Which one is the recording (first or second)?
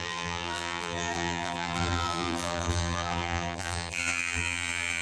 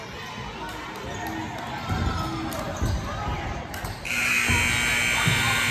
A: second